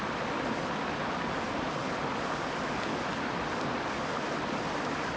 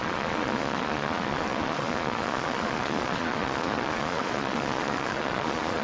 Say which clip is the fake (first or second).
second